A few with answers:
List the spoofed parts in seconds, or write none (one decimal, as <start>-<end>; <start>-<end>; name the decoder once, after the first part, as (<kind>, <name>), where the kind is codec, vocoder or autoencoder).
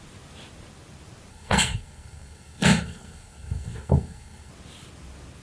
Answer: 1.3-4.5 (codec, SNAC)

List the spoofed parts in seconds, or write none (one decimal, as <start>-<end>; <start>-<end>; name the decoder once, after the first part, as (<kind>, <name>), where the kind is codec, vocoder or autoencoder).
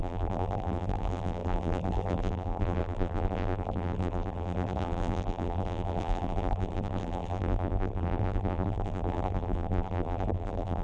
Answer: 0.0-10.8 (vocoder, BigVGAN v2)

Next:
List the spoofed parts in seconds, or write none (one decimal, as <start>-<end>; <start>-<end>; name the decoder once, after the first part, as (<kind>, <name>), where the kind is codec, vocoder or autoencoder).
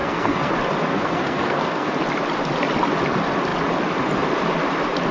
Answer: 0.0-0.5 (codec, SNAC); 0.9-1.9